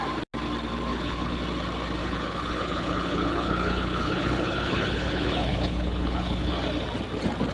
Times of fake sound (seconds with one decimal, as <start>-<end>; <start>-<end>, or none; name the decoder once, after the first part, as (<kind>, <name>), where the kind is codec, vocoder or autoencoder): 0.9-1.4 (codec, HILCodec); 2.0-6.5